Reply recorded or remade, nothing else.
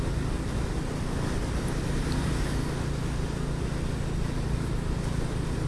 recorded